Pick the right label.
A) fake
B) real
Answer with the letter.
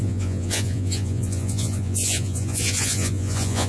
A